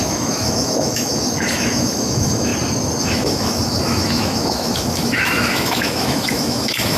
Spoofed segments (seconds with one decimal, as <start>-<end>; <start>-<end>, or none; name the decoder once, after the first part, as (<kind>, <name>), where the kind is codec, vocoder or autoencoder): 0.0-2.5 (autoencoder, DAC-VAE); 3.0-7.0